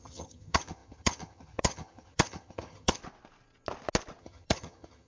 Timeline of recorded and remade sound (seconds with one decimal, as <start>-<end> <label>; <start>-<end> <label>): 0.0-3.0 remade; 3.0-4.2 recorded; 4.2-5.1 remade